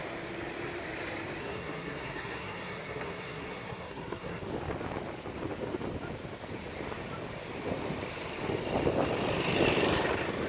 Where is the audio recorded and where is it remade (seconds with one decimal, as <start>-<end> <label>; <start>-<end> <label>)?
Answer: 0.0-1.4 recorded; 1.4-4.4 remade; 4.4-10.5 recorded